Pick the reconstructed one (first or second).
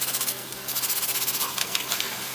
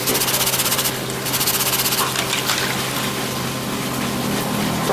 first